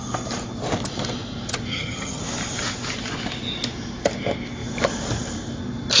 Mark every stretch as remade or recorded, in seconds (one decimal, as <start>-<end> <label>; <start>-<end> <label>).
0.0-1.7 recorded; 1.7-2.2 remade; 2.2-6.0 recorded